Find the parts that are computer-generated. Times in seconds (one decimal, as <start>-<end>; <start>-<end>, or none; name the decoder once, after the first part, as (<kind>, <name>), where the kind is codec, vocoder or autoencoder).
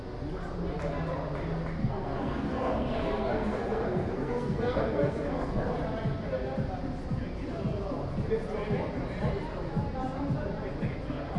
1.8-5.7 (codec, SNAC)